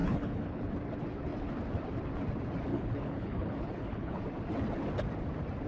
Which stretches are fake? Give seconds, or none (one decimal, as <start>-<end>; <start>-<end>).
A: 0.0-0.7; 2.7-4.2